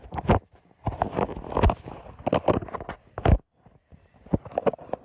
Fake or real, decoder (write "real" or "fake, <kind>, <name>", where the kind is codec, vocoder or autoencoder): real